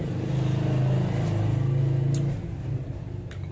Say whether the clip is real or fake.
real